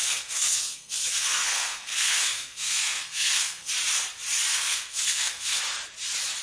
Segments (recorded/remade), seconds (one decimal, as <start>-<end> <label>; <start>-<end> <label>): 0.0-3.7 remade; 3.7-4.5 recorded; 4.5-5.6 remade; 5.6-6.4 recorded